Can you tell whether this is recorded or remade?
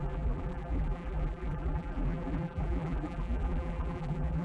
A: remade